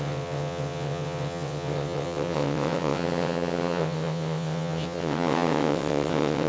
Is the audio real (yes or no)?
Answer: no